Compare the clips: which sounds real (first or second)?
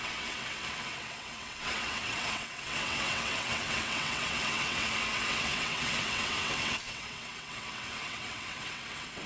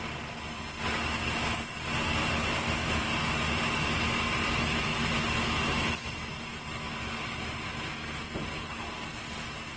second